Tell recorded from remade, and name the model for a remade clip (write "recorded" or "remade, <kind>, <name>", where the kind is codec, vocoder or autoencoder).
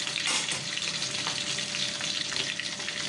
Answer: recorded